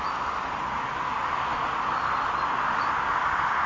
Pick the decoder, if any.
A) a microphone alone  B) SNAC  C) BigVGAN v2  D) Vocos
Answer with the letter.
A